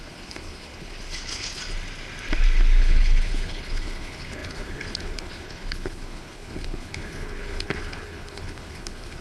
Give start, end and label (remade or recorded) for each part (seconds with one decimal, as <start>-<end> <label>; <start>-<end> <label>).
0.0-1.6 remade; 1.6-2.8 recorded; 2.8-9.2 remade